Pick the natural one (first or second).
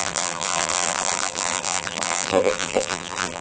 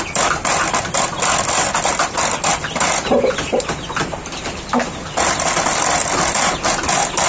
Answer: second